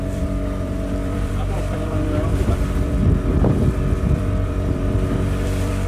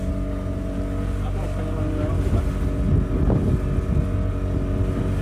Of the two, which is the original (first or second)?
second